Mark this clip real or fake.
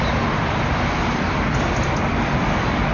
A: real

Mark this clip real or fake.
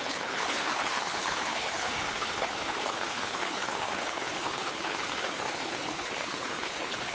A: fake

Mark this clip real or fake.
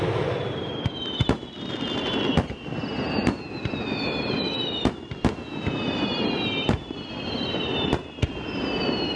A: real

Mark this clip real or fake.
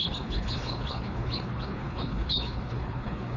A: fake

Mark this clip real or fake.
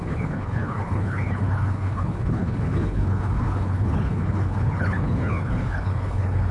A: fake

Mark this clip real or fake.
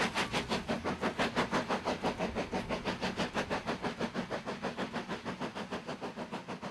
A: real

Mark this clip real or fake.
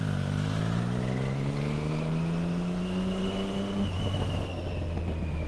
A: real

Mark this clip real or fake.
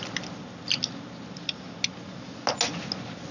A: real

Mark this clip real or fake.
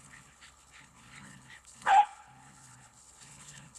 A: fake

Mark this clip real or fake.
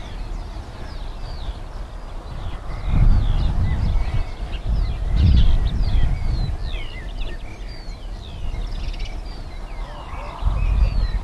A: real